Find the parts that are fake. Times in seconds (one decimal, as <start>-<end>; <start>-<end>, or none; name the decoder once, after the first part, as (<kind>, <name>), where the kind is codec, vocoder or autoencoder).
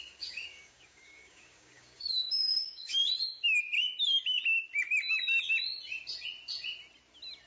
0.0-3.0 (codec, DAC)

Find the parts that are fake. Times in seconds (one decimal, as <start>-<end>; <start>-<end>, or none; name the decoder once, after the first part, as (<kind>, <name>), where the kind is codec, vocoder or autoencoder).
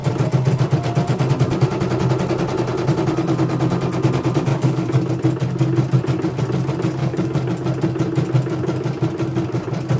4.5-5.1 (codec, DAC); 7.0-7.5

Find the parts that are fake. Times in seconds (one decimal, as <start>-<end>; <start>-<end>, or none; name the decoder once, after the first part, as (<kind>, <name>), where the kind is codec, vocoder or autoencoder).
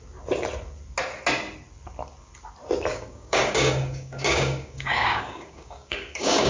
2.9-6.5 (codec, DAC)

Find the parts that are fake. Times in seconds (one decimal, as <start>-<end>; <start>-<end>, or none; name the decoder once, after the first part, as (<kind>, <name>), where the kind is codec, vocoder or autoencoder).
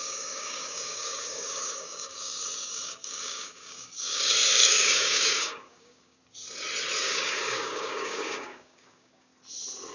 0.0-6.2 (codec, DAC); 7.0-9.3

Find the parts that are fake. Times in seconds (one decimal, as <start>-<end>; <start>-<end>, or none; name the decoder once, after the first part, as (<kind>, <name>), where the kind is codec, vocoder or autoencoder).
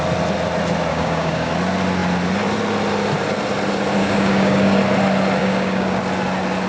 0.9-1.5 (codec, DAC); 4.0-4.8; 5.4-6.0